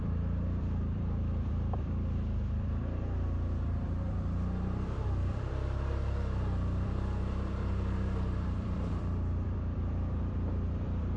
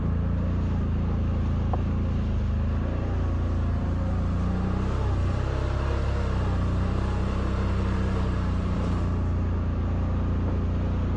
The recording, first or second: second